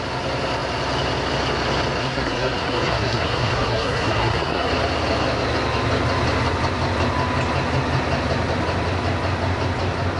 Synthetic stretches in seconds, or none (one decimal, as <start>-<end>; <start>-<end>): 2.0-4.7